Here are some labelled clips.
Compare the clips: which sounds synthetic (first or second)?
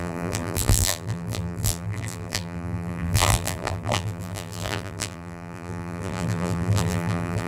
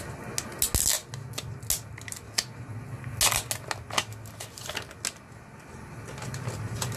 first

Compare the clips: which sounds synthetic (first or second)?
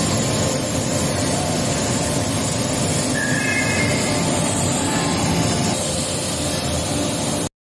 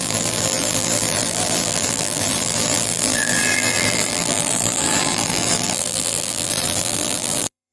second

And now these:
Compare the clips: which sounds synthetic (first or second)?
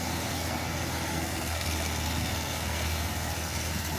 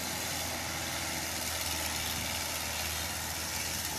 first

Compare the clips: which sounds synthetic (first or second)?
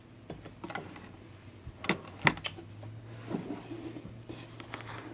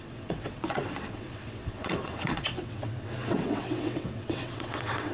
second